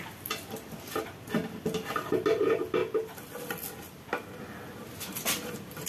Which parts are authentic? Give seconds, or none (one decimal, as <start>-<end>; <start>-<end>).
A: 0.0-5.9